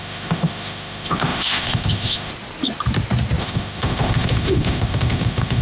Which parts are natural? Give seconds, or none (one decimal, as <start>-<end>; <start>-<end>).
2.3-3.4